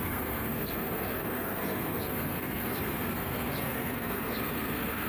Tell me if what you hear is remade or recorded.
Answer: remade